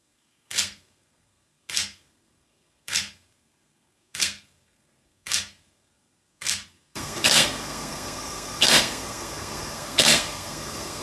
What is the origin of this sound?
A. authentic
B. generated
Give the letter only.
B